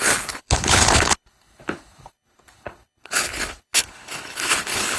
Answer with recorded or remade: remade